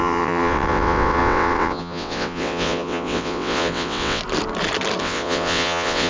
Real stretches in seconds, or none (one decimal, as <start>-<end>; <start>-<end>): 4.2-5.0